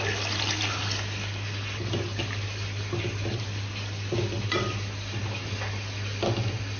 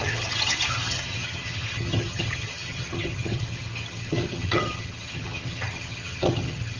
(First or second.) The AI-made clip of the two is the second